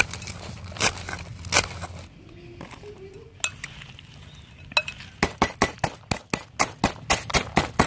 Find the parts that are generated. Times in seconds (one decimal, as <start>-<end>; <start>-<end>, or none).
none